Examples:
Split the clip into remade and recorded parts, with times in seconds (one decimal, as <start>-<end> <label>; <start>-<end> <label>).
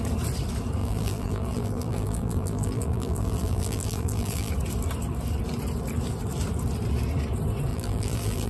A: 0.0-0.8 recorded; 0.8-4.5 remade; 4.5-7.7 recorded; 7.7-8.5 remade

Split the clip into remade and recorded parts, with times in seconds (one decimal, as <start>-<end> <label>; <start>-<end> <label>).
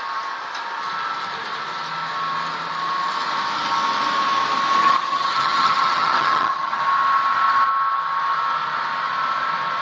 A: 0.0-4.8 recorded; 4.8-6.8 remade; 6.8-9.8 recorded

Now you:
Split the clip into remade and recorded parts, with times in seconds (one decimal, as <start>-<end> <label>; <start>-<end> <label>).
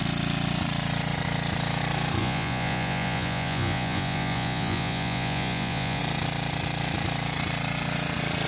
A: 0.0-2.2 recorded; 2.2-6.0 remade; 6.0-8.5 recorded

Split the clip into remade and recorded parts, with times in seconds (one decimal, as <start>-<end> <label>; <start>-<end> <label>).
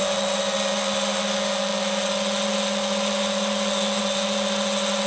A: 0.0-5.1 recorded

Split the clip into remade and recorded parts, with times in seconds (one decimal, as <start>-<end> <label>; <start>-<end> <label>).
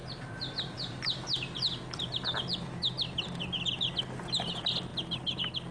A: 0.0-3.4 remade; 3.4-5.7 recorded